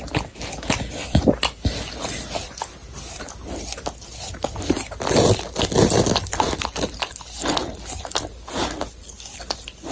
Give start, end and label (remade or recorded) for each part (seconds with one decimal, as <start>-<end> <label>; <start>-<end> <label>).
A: 0.0-9.9 recorded